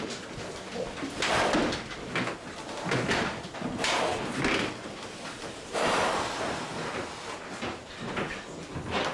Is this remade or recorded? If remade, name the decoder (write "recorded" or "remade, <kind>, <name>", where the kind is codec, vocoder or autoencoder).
recorded